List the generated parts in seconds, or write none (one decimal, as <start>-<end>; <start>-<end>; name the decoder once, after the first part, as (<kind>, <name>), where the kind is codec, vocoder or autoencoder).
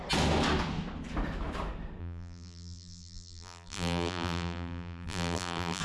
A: 2.0-5.8 (vocoder, BigVGAN v2)